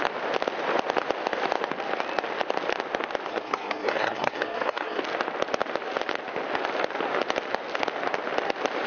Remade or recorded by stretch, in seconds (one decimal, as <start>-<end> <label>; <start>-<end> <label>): 0.0-3.3 recorded; 3.3-5.0 remade; 5.0-8.9 recorded